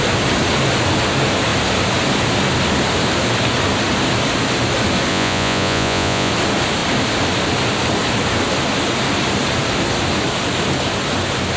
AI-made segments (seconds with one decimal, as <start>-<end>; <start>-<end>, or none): 5.1-6.3